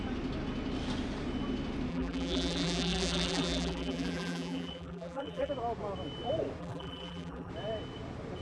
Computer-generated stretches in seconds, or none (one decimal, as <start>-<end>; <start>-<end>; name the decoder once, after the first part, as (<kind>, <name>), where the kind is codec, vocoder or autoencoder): 1.9-5.5 (vocoder, BigVGAN v2); 6.6-7.5